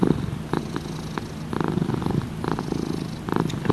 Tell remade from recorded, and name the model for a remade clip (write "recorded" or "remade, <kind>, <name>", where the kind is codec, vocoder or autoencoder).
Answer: recorded